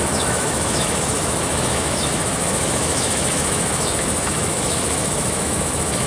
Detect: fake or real fake